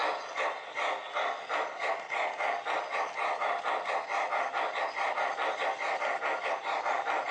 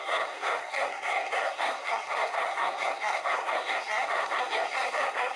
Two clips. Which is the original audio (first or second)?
first